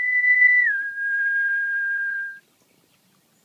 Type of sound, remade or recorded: remade